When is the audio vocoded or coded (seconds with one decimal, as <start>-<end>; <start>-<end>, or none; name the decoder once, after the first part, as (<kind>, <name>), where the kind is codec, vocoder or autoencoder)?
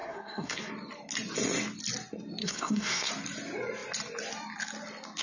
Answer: 0.0-0.7 (codec, SNAC); 2.4-3.1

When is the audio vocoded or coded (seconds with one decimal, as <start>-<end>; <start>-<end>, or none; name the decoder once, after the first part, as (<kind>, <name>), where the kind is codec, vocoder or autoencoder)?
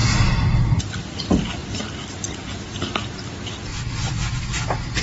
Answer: 3.7-4.4 (vocoder, BigVGAN v2)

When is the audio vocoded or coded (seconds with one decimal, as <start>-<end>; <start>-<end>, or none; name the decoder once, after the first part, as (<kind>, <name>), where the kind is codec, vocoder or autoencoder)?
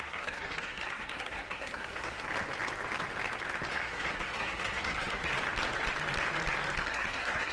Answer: 0.0-2.3 (codec, SNAC); 3.7-5.3; 6.8-7.5